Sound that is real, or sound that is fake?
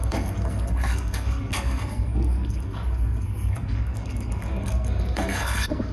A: fake